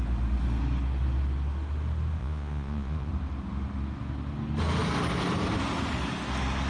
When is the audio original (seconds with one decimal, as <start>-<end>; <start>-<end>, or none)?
0.0-2.2; 3.1-6.7